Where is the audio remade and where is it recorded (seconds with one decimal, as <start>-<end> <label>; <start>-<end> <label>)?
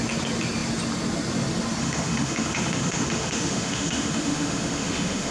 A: 0.0-1.8 recorded; 1.8-5.3 remade